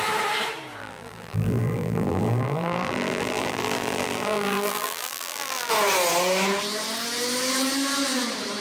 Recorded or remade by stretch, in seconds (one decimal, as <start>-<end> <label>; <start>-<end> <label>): 0.0-0.8 recorded; 0.8-5.7 remade; 5.7-8.6 recorded